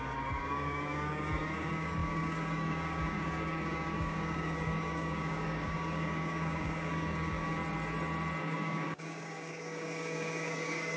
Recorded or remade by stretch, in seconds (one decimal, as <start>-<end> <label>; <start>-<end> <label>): 0.0-7.6 remade; 7.6-8.4 recorded; 8.4-11.0 remade